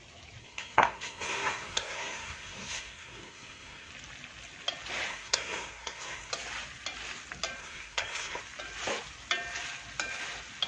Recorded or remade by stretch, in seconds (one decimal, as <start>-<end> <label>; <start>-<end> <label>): 0.0-0.4 recorded; 0.4-3.9 remade; 3.9-5.1 recorded; 5.1-6.3 remade; 6.3-7.6 recorded; 7.6-8.4 remade; 8.4-10.7 recorded